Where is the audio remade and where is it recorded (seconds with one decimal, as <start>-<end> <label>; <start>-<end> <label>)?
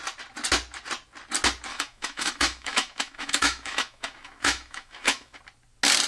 0.0-1.7 recorded; 1.7-5.4 remade; 5.4-6.1 recorded